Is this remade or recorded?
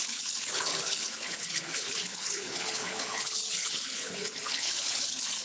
remade